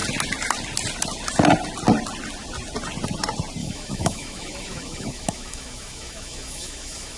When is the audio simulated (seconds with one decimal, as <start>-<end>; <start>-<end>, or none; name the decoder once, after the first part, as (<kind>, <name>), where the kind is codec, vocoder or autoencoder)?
3.6-7.2 (autoencoder, DAC-VAE)